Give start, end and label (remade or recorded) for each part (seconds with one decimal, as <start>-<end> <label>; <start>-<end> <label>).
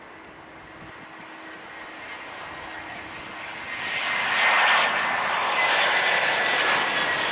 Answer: 0.0-7.3 recorded